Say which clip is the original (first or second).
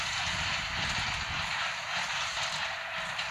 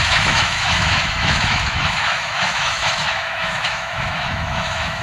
first